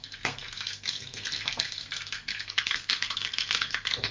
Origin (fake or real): fake